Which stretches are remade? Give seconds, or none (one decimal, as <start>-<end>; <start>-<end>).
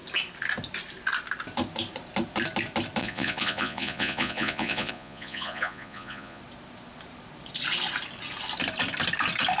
3.0-6.4